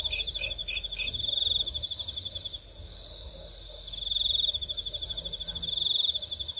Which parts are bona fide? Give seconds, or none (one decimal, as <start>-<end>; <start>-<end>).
0.0-6.6

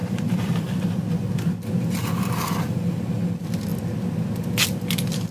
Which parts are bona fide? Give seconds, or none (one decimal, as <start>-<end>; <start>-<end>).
3.2-5.3

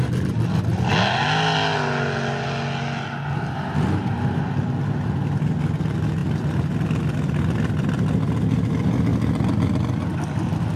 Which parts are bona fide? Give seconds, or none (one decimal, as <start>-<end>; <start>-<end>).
0.0-10.8